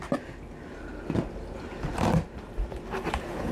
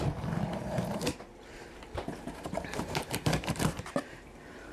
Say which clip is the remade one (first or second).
second